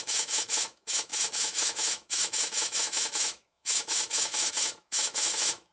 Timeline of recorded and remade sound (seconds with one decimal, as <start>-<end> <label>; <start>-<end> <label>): 0.0-5.7 remade